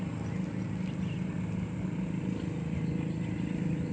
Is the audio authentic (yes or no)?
yes